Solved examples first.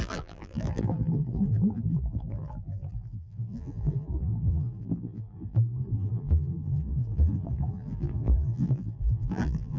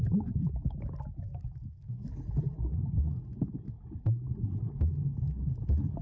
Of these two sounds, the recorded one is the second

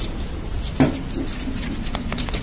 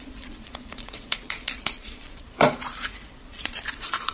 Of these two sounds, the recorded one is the first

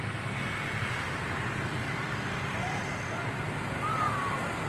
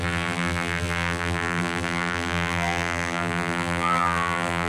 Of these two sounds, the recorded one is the first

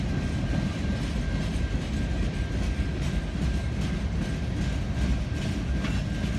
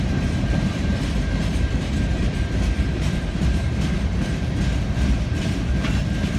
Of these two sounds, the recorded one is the first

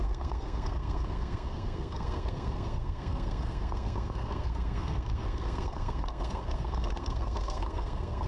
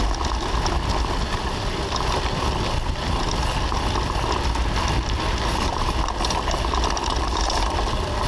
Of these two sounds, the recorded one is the second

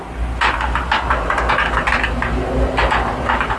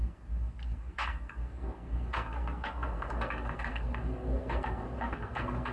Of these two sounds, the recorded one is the first